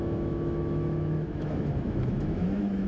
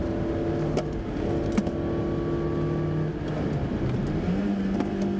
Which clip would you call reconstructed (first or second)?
first